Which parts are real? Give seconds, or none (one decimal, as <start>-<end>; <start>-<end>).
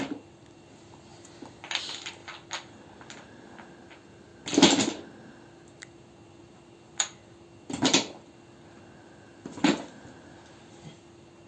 0.0-11.5